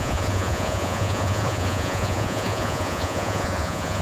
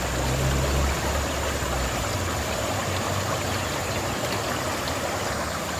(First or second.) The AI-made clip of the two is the first